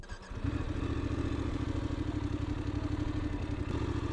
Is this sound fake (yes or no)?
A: no